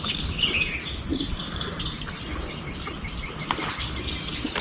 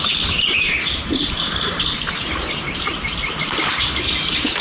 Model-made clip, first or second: second